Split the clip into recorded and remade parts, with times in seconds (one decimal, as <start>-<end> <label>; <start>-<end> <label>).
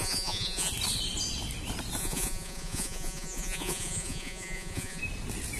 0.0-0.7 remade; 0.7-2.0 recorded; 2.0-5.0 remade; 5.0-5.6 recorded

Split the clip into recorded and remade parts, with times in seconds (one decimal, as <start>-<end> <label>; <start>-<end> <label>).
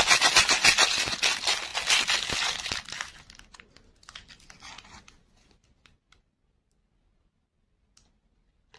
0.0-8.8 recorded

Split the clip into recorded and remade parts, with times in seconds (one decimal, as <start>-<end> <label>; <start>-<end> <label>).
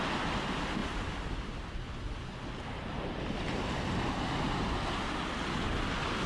0.0-6.3 recorded